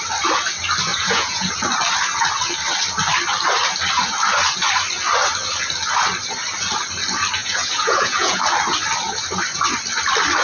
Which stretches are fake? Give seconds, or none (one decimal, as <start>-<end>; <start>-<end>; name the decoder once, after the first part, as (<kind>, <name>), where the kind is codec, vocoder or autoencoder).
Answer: 0.9-1.5 (vocoder, Vocos); 7.4-8.4